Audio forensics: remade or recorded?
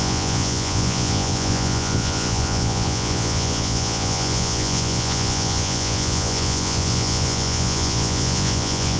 remade